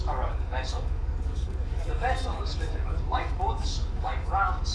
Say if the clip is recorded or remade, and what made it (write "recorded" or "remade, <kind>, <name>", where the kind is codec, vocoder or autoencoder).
remade, codec, DAC